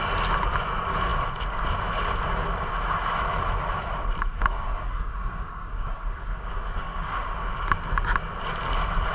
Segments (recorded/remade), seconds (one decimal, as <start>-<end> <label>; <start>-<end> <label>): 0.0-4.3 recorded; 4.3-7.2 remade; 7.2-9.1 recorded